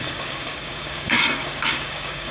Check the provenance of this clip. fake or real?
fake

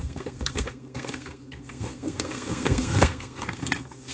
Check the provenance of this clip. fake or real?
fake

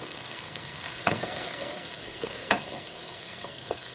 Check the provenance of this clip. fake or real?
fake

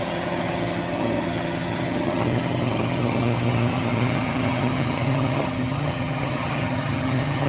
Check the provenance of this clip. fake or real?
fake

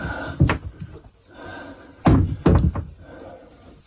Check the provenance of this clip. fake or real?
real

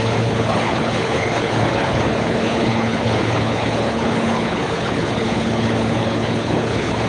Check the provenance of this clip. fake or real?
fake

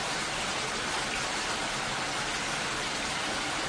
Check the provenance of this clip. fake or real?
real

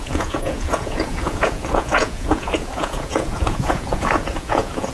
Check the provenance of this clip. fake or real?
fake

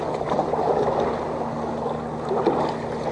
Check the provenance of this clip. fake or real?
real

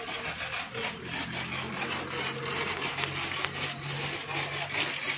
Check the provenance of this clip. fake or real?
real